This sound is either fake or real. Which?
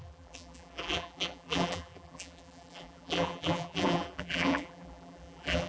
fake